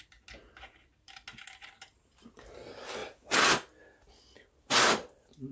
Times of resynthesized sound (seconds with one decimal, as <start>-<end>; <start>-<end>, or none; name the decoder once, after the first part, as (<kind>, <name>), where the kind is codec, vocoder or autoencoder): none